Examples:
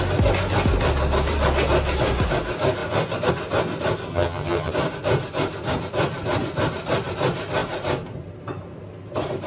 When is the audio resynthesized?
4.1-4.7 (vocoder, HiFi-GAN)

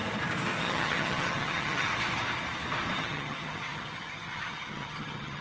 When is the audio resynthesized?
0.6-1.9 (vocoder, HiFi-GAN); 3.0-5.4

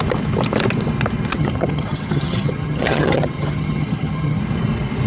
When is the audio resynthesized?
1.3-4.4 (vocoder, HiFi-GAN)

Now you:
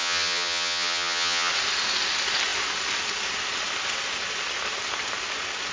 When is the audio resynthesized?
0.0-1.5 (vocoder, HiFi-GAN)

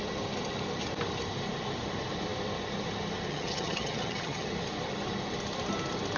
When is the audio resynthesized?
3.3-4.5 (vocoder, HiFi-GAN)

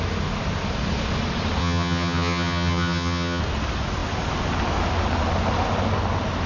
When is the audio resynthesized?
1.6-3.4 (vocoder, HiFi-GAN)

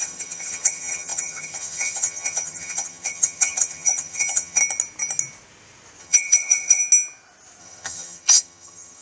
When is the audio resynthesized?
0.0-4.6 (vocoder, HiFi-GAN); 6.0-6.8; 7.6-9.0

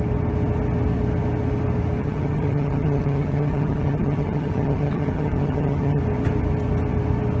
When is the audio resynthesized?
2.0-6.0 (vocoder, HiFi-GAN)